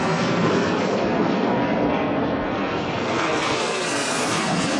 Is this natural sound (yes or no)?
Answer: no